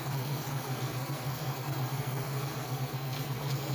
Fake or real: fake